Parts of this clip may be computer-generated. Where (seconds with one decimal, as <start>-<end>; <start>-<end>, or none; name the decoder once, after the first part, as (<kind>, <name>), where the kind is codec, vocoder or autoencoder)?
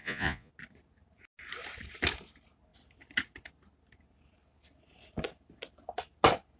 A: 0.0-0.5 (vocoder, Vocos)